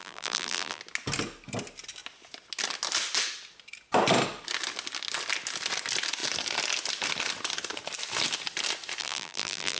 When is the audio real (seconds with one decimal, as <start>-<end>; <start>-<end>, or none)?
0.8-9.0